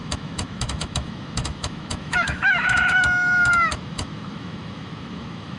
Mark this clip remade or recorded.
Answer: remade